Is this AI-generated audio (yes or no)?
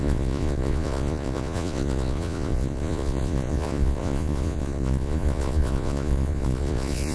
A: yes